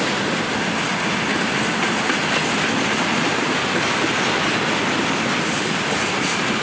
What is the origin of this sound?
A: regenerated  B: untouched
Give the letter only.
B